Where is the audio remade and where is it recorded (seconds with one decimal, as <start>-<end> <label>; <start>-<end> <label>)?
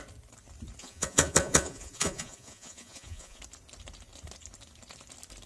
0.0-0.8 recorded; 0.8-3.4 remade; 3.4-5.5 recorded